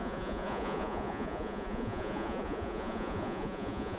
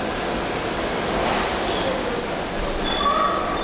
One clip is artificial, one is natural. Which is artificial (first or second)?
first